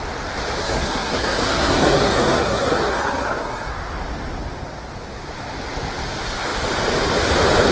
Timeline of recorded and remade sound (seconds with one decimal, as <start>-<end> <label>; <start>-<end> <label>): 0.0-0.6 recorded; 0.6-3.7 remade; 3.7-7.7 recorded